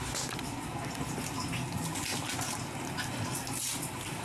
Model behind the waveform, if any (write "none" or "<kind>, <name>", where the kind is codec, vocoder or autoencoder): none